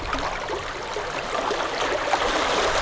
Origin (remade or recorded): recorded